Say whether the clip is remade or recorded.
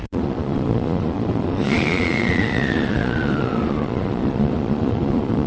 remade